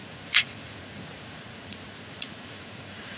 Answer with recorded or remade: remade